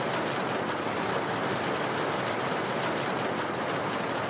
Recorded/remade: recorded